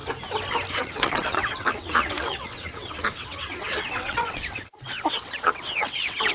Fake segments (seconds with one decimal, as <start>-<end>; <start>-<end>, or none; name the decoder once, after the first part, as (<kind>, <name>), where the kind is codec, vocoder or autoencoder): 0.7-6.3 (vocoder, WaveNeXt)